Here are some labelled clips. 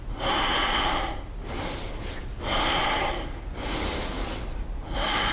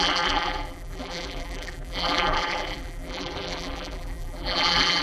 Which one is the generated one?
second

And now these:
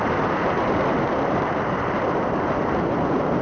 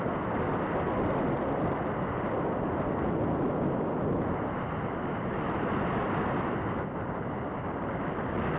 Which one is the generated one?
first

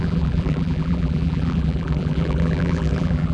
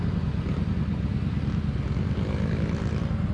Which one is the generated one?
first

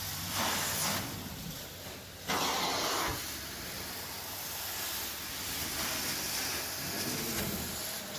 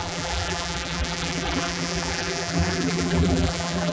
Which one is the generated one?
second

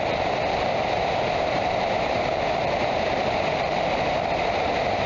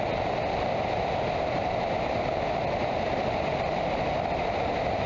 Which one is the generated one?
first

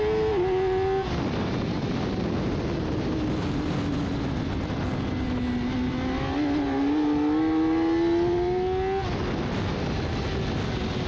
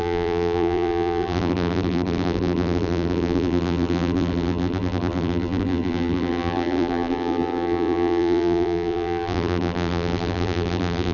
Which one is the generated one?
second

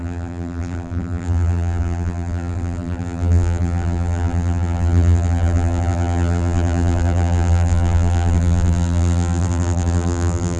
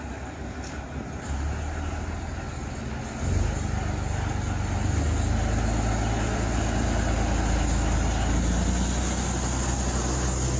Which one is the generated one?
first